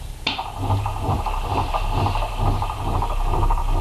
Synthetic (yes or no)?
no